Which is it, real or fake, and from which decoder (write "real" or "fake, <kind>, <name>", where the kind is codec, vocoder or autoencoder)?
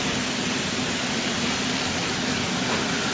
real